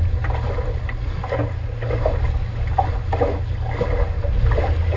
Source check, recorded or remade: recorded